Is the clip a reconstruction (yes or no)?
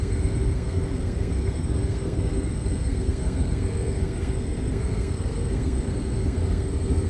yes